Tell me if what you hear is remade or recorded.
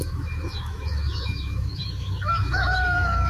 remade